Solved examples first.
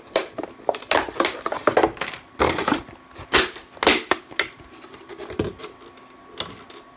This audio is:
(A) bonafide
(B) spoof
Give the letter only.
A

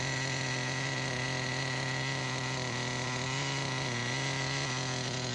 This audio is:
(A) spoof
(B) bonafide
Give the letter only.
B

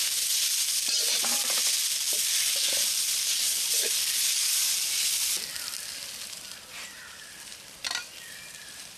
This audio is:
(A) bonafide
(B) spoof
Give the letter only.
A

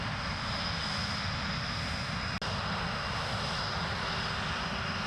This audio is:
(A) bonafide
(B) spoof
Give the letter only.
A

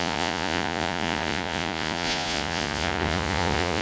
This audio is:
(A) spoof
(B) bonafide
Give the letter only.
A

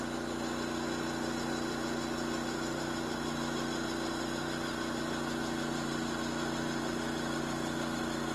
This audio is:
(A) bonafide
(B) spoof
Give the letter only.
A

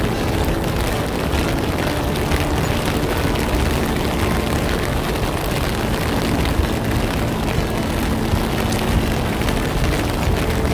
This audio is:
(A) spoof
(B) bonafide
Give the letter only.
B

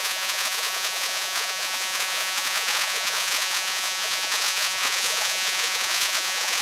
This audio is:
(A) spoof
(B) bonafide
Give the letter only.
A